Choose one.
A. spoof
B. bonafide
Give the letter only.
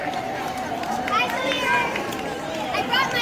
A